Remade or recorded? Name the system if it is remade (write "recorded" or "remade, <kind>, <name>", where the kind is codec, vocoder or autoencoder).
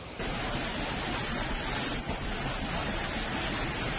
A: recorded